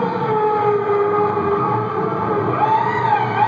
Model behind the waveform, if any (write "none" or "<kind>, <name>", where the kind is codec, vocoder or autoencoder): vocoder, BigVGAN v2